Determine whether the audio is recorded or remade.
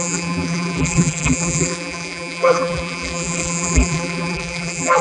remade